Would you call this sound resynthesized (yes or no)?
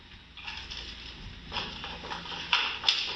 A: no